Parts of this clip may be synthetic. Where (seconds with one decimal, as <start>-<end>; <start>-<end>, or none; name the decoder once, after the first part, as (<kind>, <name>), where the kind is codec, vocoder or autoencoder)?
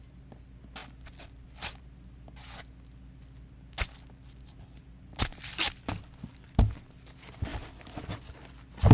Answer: none